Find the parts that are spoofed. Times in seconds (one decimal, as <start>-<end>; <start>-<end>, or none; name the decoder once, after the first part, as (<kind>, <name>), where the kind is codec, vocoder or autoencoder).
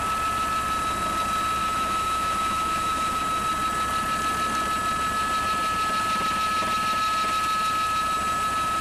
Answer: 1.6-3.2 (autoencoder, DAC-VAE)